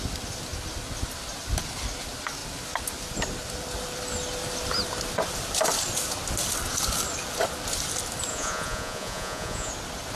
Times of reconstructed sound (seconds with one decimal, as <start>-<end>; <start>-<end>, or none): 8.3-9.7